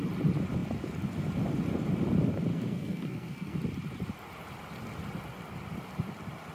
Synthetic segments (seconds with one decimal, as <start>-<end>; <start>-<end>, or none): 2.5-3.6